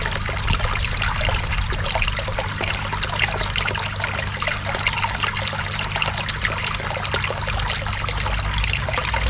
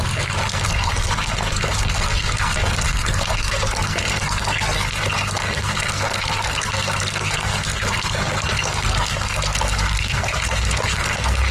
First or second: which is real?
first